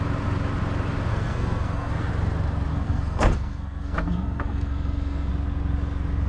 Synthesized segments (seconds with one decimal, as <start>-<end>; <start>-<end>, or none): 1.1-2.1; 2.7-5.3